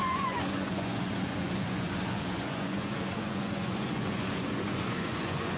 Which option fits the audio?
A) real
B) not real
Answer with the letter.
B